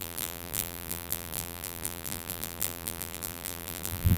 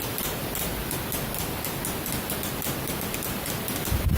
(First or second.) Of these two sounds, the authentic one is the second